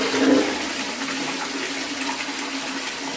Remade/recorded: recorded